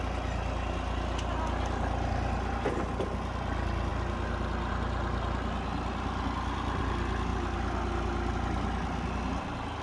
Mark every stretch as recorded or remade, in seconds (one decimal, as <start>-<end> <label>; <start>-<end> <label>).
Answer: 0.0-9.8 recorded